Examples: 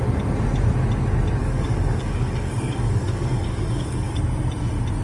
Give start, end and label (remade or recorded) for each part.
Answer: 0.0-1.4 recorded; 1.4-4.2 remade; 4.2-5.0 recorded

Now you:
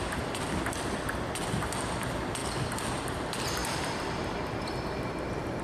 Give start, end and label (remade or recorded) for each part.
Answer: 0.0-5.6 recorded

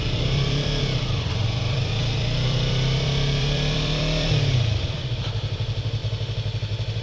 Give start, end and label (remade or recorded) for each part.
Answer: 0.0-6.0 remade; 6.0-7.0 recorded

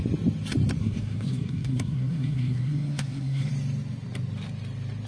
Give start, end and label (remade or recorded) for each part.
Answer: 0.0-0.8 recorded; 0.8-3.5 remade; 3.5-5.1 recorded

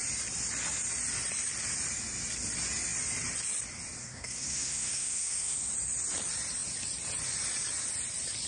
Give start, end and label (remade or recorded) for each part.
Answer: 0.0-4.0 recorded; 4.0-5.7 remade; 5.7-8.5 recorded

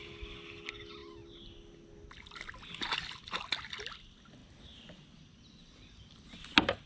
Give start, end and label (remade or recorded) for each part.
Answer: 0.0-6.9 recorded

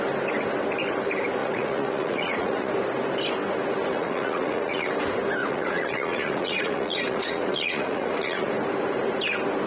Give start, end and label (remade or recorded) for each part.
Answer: 0.0-1.4 recorded; 1.4-2.7 remade; 2.7-3.9 recorded; 3.9-4.9 remade; 4.9-5.4 recorded; 5.4-8.5 remade; 8.5-9.7 recorded